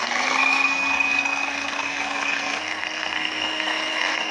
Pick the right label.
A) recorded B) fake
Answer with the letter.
B